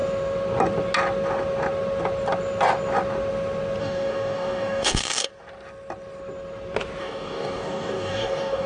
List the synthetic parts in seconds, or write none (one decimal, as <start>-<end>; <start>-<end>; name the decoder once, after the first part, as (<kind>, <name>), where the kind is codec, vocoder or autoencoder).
3.8-5.3 (codec, DAC); 7.0-8.7